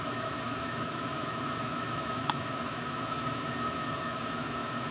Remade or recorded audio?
remade